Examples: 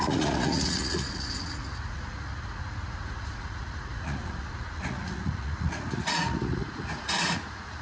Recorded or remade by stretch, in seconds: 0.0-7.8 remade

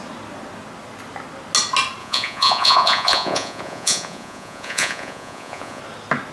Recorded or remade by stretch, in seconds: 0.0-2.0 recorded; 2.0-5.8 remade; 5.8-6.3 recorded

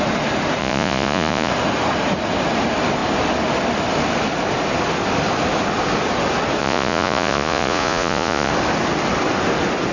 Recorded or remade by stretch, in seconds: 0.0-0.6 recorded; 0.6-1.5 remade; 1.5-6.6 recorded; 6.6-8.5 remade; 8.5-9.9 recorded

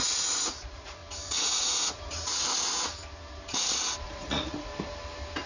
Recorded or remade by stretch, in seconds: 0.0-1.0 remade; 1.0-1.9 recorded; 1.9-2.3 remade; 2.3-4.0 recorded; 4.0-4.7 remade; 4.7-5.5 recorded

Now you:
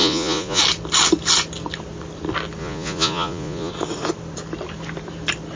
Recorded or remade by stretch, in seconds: 0.0-0.6 remade; 0.6-2.6 recorded; 2.6-3.7 remade; 3.7-5.6 recorded